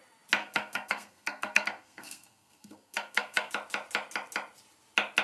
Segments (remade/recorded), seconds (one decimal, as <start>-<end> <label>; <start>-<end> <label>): 0.0-0.4 recorded; 0.4-3.5 remade; 3.5-5.2 recorded